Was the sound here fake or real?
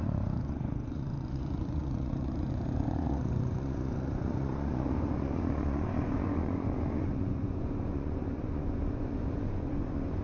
fake